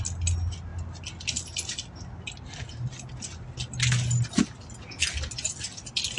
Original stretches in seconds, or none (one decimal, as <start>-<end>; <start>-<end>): 0.0-6.2